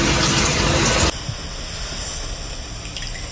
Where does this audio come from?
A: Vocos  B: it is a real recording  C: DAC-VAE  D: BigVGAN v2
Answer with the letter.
B